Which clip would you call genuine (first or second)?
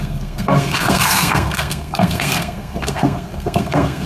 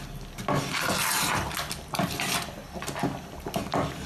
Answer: second